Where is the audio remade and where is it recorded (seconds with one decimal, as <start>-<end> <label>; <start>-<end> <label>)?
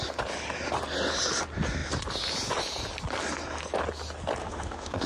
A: 0.0-4.4 recorded; 4.4-5.1 remade